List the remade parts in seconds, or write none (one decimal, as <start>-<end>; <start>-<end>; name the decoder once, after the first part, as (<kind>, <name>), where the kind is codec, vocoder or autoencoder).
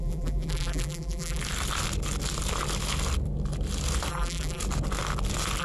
0.0-1.4 (vocoder, BigVGAN v2); 4.1-4.6